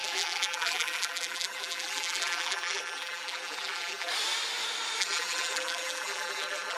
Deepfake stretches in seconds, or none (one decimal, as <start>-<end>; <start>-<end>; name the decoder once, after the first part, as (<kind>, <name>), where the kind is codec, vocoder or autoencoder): 0.0-4.1 (vocoder, BigVGAN v2); 5.0-6.8